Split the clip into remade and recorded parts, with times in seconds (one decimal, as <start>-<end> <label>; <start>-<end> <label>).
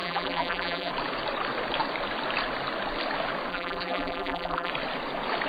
0.0-0.9 remade; 0.9-3.5 recorded; 3.5-4.7 remade; 4.7-5.5 recorded